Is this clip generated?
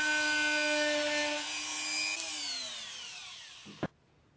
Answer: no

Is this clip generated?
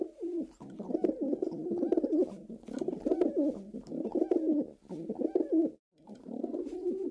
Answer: no